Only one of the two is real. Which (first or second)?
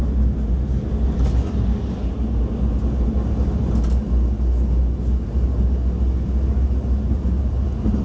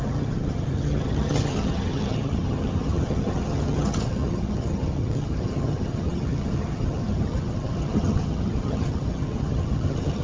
first